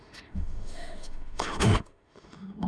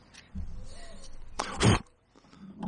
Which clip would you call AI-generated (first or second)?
first